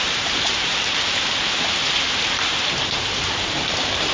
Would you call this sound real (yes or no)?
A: no